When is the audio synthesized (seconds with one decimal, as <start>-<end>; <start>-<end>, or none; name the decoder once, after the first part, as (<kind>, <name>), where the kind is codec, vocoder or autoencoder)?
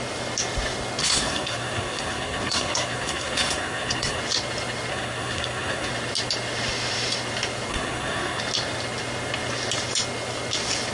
1.0-4.2 (codec, SNAC); 4.9-5.9; 7.7-8.4